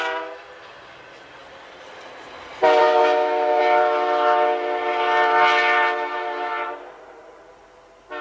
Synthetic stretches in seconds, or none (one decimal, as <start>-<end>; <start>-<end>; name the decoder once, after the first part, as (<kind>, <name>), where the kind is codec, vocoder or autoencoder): 2.8-3.6 (codec, SNAC)